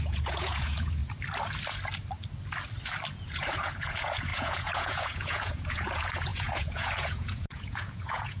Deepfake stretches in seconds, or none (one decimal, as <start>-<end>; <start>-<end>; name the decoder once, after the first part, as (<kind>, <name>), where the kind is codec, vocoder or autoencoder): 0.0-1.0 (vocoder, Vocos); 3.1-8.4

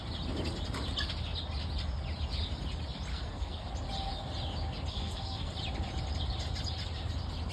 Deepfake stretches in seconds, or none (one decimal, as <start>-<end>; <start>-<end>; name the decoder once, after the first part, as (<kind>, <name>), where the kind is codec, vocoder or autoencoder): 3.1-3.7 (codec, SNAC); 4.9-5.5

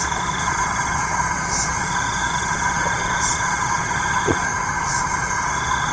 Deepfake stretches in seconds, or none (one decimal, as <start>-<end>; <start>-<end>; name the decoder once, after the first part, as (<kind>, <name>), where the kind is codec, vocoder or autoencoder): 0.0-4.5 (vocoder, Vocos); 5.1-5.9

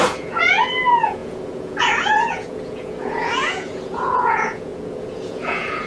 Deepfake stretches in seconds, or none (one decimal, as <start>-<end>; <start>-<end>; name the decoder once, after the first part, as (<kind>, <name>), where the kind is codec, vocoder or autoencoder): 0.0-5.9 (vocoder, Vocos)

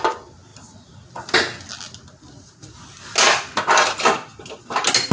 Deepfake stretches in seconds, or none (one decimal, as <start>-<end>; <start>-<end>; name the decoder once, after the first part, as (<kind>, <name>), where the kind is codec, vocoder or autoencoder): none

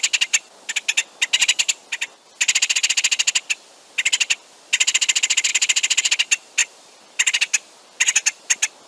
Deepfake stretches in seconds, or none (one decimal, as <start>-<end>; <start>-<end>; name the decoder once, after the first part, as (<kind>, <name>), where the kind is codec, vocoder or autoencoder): 5.5-6.1 (vocoder, BigVGAN v2)